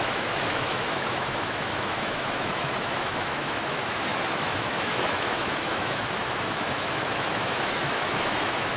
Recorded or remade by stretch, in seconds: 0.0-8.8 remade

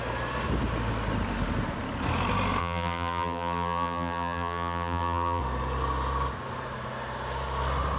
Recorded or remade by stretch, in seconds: 0.0-2.6 recorded; 2.6-5.4 remade; 5.4-8.0 recorded

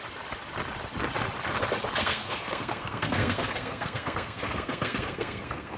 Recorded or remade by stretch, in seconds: 0.0-2.0 recorded; 2.0-5.8 remade